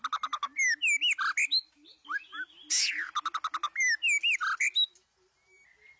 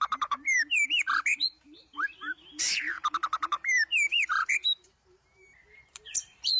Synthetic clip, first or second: second